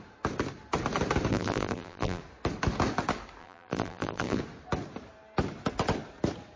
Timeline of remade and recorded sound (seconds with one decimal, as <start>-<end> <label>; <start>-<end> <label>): 0.0-1.3 recorded; 1.3-2.2 remade; 2.2-3.4 recorded; 3.4-4.4 remade; 4.4-6.6 recorded